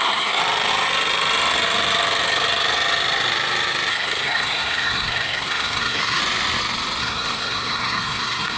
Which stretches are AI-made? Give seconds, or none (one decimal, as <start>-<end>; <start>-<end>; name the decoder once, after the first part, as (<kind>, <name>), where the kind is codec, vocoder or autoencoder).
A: 0.0-0.4 (codec, SNAC); 3.9-6.2; 7.0-8.6